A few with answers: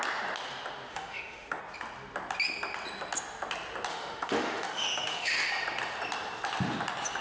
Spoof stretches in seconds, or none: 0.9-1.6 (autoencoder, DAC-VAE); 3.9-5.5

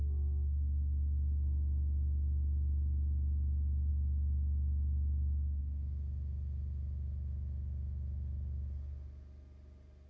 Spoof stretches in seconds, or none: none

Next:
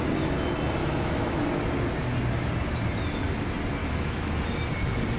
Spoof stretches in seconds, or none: 0.8-1.4 (autoencoder, DAC-VAE); 3.8-4.4

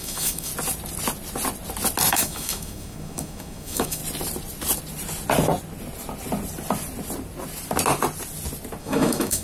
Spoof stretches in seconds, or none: 0.0-0.5 (autoencoder, DAC-VAE); 2.1-4.0; 8.8-9.4